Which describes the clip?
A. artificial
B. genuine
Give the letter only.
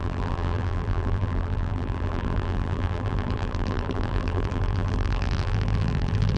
A